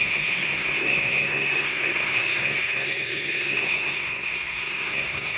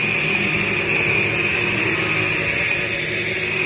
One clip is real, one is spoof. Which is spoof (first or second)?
first